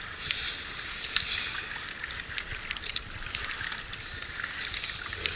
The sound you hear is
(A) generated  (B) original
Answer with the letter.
B